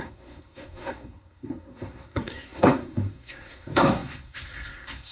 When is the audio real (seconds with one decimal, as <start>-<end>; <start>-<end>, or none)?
none